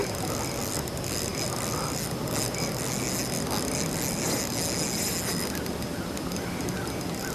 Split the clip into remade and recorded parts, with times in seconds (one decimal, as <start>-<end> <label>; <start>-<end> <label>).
0.0-7.3 recorded